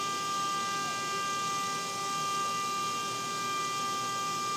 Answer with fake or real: real